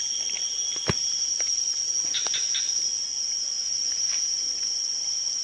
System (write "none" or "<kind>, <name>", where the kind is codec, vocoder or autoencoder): none